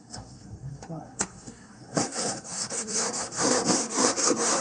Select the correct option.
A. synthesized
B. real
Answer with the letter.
A